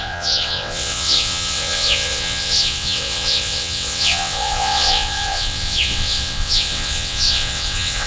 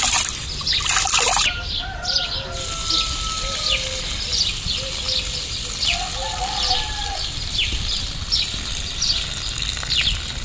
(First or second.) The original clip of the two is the second